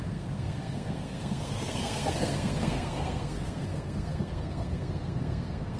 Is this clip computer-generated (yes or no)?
yes